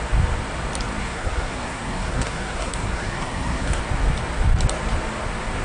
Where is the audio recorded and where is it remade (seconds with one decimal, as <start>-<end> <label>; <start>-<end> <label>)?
0.0-1.0 recorded; 1.0-3.8 remade; 3.8-5.6 recorded